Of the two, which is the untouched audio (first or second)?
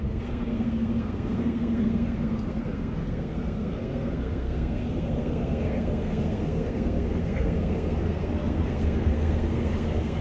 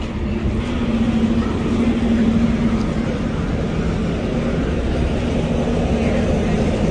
second